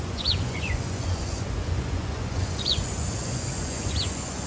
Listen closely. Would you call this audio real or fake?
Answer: fake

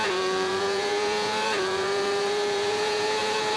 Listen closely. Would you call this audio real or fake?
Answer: fake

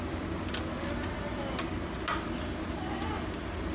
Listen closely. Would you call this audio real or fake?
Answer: real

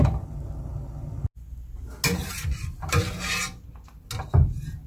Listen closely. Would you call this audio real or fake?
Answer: real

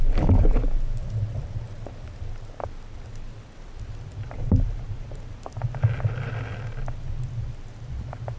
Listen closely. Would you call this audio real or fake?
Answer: real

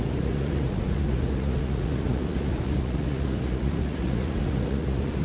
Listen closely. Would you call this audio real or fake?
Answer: fake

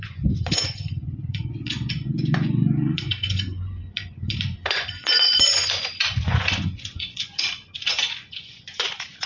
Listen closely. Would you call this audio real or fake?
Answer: fake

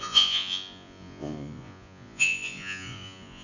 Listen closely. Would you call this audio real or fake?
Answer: fake